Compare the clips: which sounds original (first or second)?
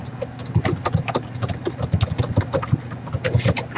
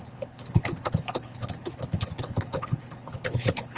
first